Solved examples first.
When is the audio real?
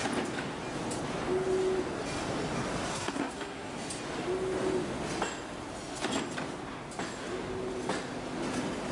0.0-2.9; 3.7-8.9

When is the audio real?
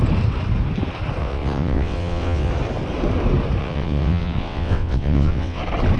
0.0-1.2; 2.5-3.6; 5.6-6.0